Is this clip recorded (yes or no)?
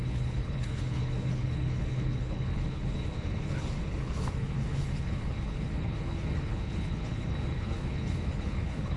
no